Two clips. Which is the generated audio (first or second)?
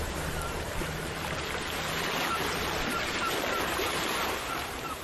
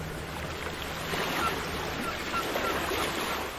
first